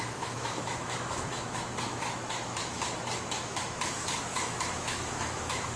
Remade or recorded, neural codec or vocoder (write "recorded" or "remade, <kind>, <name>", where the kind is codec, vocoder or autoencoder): remade, autoencoder, DAC-VAE